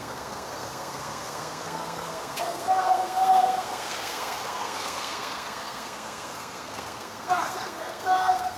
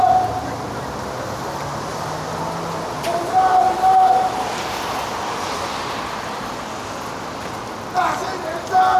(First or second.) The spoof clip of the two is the first